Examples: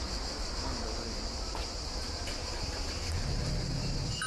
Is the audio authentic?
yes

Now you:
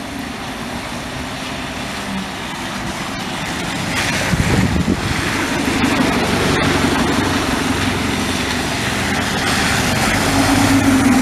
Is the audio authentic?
yes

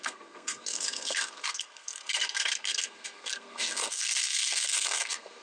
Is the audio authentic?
no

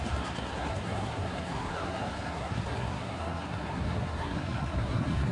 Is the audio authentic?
no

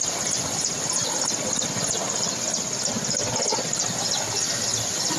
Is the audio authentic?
yes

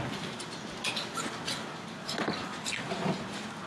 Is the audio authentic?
yes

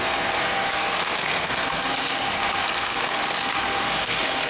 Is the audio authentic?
no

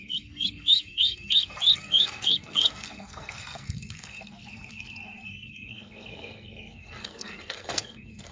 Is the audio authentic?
no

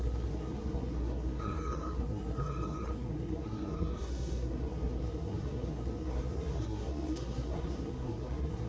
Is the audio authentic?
no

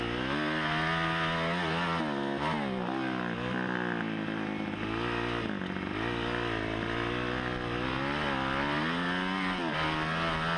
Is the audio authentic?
yes